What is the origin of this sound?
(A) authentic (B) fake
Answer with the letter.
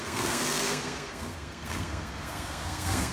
B